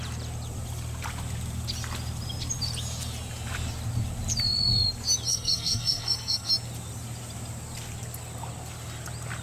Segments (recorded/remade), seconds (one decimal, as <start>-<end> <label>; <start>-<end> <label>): 0.0-5.3 recorded; 5.3-6.5 remade; 6.5-9.4 recorded